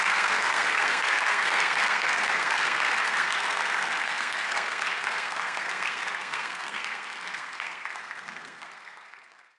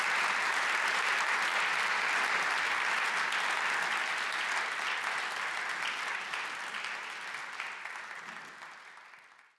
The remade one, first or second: first